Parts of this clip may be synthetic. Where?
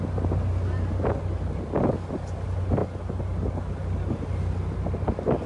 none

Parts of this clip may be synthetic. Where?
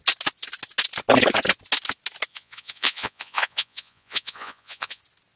2.3-5.0 (vocoder, Vocos)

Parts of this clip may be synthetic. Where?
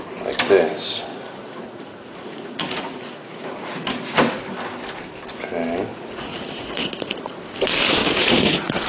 1.1-4.4 (vocoder, Vocos); 5.9-7.4; 8.0-8.9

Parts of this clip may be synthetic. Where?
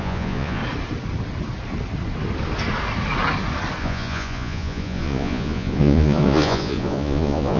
0.0-0.6 (vocoder, Vocos); 3.8-7.6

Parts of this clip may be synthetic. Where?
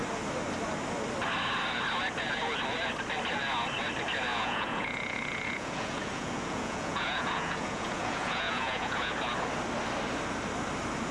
4.3-9.1 (vocoder, Vocos)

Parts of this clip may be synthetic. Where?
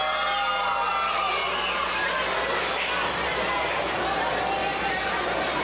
none